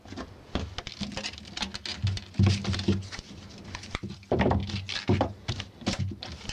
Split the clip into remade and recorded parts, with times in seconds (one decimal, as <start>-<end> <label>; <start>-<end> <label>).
0.0-4.6 recorded; 4.6-6.0 remade; 6.0-6.5 recorded